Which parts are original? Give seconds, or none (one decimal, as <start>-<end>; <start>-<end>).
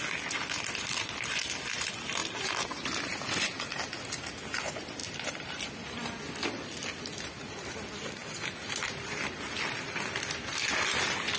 0.0-5.0; 5.6-11.4